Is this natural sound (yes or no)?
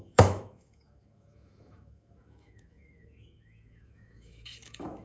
no